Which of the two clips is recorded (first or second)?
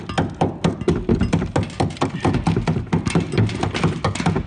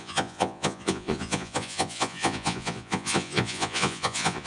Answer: first